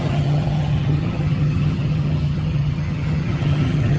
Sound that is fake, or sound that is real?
fake